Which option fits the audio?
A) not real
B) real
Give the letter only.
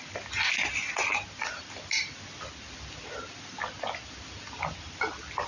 B